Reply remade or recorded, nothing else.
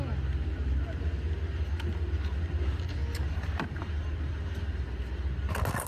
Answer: recorded